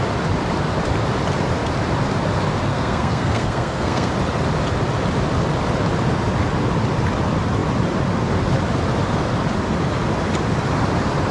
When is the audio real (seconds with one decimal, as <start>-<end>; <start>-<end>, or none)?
0.0-2.7; 4.1-11.3